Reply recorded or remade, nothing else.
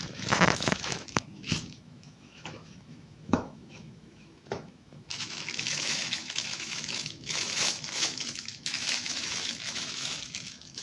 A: remade